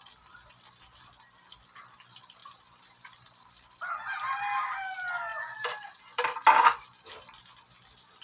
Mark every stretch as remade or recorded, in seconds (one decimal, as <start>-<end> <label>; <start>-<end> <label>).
0.0-2.4 recorded; 2.4-4.4 remade; 4.4-5.3 recorded; 5.3-7.4 remade; 7.4-8.2 recorded